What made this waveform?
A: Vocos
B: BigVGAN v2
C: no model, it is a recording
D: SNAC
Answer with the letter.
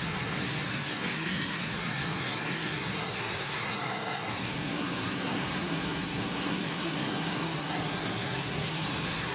D